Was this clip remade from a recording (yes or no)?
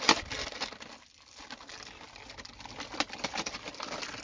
no